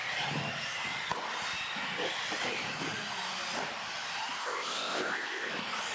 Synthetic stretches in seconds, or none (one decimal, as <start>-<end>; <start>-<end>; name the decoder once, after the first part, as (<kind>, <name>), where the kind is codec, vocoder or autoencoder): 4.4-5.5 (codec, ZipCodec)